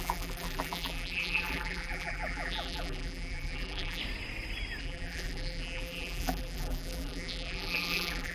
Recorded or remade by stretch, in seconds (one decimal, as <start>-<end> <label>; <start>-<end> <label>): 0.0-4.0 remade; 4.0-4.8 recorded; 4.8-8.3 remade